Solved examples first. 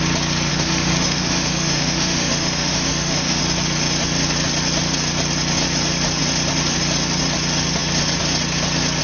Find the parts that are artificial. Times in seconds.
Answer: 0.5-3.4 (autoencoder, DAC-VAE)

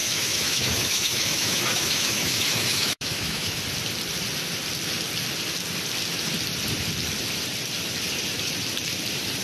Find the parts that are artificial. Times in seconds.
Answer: 0.0-3.6 (autoencoder, DAC-VAE)

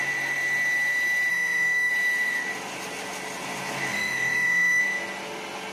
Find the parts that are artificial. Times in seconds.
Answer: 1.3-1.9 (autoencoder, DAC-VAE); 3.9-4.8

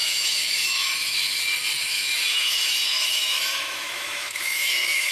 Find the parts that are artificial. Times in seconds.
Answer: 0.0-1.4 (autoencoder, DAC-VAE); 1.8-5.1

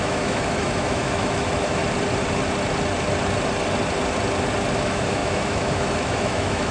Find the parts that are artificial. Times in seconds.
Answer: 0.0-1.8 (autoencoder, DAC-VAE); 4.7-6.7

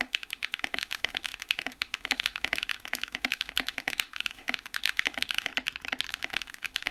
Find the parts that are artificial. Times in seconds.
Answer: 0.0-5.5 (autoencoder, DAC-VAE); 6.1-6.9

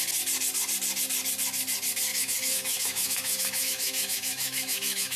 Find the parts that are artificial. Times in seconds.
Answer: 2.1-5.2 (autoencoder, DAC-VAE)